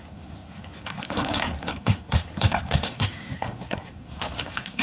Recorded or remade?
remade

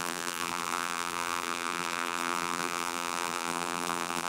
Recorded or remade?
remade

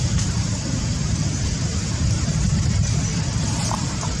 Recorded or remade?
remade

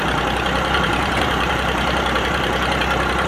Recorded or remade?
remade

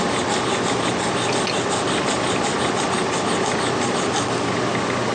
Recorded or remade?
recorded